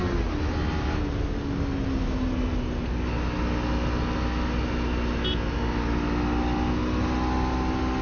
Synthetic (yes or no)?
no